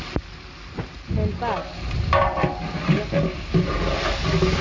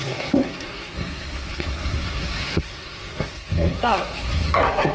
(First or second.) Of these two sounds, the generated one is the second